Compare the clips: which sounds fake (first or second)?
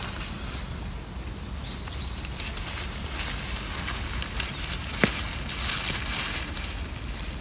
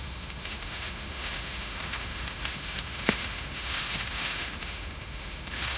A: second